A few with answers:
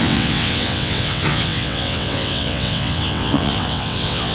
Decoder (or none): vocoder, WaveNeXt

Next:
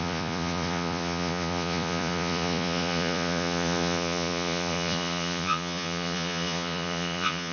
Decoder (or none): vocoder, Vocos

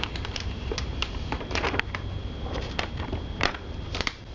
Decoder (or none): vocoder, BigVGAN v2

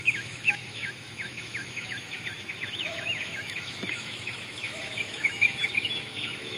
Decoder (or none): autoencoder, DAC-VAE